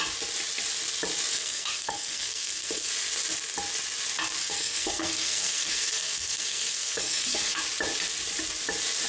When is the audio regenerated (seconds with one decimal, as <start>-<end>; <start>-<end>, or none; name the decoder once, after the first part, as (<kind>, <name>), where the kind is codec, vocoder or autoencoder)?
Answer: 1.3-2.9 (codec, SNAC); 4.4-7.6